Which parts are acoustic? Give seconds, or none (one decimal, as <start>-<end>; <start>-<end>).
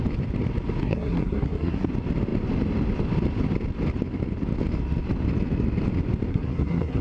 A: 0.0-0.8; 1.9-6.3